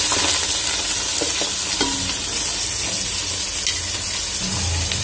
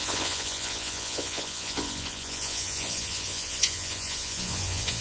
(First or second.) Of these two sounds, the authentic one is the first